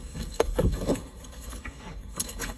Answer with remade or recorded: remade